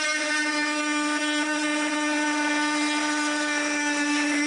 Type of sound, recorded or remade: recorded